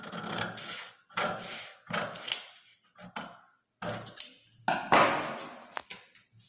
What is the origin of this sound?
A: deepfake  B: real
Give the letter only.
B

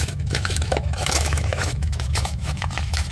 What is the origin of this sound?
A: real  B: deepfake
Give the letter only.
B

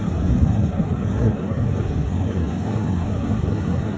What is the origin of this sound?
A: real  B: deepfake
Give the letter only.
B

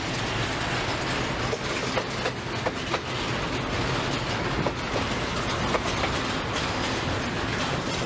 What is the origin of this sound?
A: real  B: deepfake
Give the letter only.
A